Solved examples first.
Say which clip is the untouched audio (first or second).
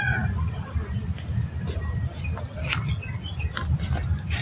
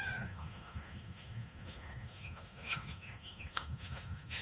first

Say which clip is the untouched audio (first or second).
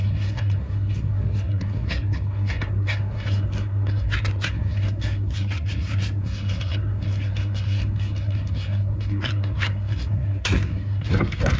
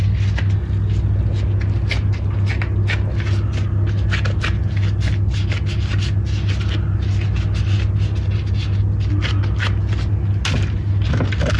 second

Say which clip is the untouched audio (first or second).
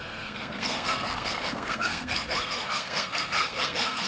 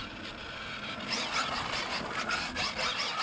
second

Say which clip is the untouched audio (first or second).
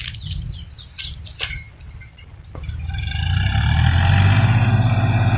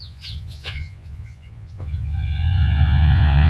first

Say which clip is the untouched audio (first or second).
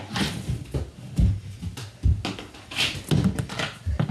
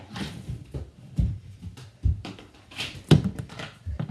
first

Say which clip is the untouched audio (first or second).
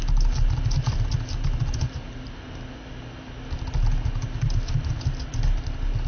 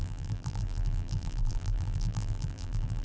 first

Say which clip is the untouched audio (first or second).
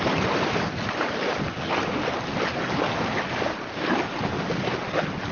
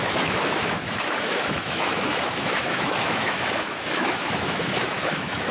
first